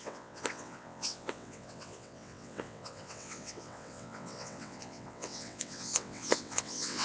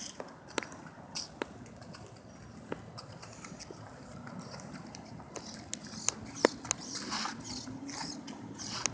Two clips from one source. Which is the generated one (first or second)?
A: first